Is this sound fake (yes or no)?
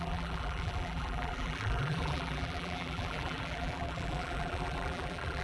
yes